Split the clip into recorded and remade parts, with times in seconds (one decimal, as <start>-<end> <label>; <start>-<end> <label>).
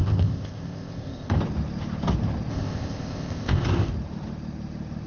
0.0-1.4 remade; 1.4-2.5 recorded; 2.5-3.9 remade; 3.9-5.1 recorded